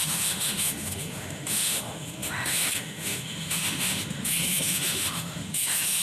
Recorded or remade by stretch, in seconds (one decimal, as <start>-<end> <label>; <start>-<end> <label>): 0.0-6.0 remade